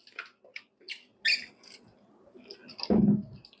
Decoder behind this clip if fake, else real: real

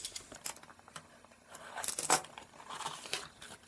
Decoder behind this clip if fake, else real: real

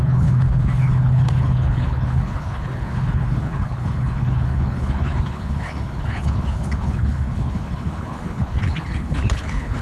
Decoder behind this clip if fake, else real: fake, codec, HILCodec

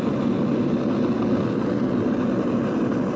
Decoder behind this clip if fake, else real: real